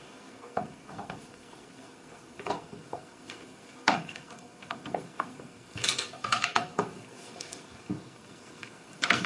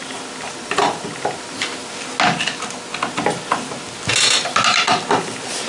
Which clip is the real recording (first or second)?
second